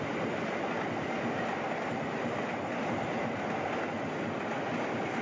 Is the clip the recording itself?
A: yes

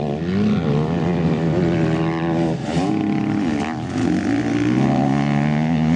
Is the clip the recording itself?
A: yes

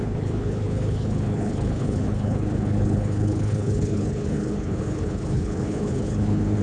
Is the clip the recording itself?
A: no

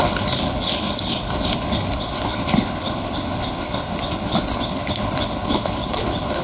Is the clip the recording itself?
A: no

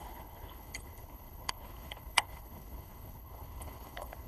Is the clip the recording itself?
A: no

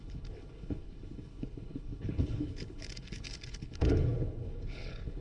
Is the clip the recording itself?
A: no